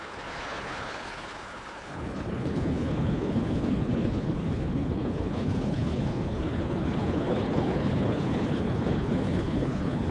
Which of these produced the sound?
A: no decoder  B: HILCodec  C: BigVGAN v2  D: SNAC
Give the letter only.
B